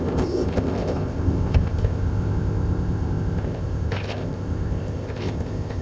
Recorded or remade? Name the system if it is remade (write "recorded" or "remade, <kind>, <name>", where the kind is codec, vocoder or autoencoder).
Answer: remade, codec, ZipCodec